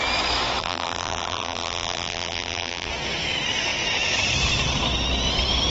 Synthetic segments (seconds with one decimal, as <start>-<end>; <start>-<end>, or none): 0.6-2.9